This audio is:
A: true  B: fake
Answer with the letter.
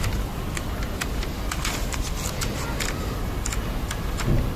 A